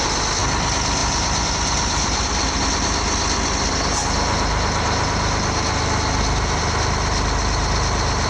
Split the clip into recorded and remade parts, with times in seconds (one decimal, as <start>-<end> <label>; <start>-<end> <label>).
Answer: 0.0-8.3 recorded